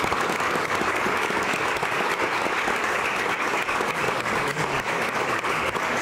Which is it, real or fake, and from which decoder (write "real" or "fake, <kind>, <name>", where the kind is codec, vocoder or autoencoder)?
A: fake, codec, DAC